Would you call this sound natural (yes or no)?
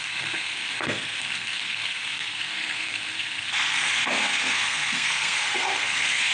no